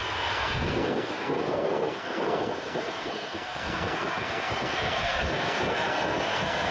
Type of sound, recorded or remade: remade